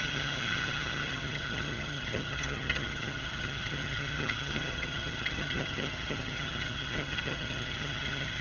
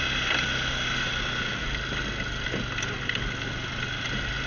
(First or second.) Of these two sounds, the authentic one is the second